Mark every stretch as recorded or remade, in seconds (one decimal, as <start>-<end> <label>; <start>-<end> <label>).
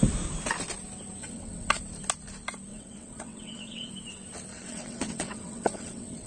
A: 0.0-1.2 recorded; 1.2-1.8 remade; 1.8-2.7 recorded; 2.7-3.9 remade; 3.9-4.5 recorded; 4.5-6.3 remade